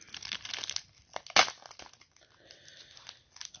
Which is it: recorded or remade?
recorded